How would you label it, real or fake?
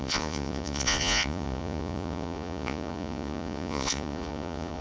fake